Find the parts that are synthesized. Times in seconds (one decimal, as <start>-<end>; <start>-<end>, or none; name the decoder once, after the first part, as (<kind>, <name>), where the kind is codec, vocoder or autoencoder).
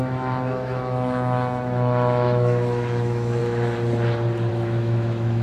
0.0-3.4 (autoencoder, DAC-VAE); 4.5-5.4